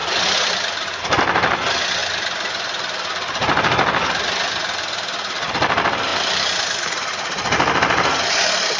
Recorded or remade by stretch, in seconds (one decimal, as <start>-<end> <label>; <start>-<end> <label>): 0.0-8.8 recorded